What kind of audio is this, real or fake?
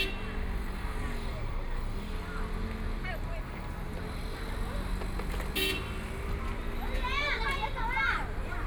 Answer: real